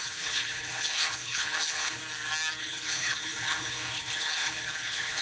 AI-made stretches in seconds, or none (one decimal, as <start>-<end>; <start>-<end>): 0.0-2.0; 2.6-5.2